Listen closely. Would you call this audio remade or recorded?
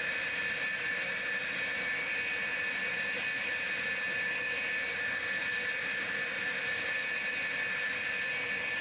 recorded